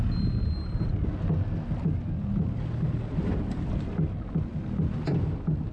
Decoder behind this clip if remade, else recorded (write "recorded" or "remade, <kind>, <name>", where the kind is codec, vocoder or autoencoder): recorded